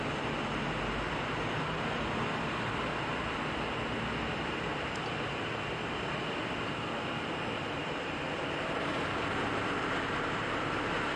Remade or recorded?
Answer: remade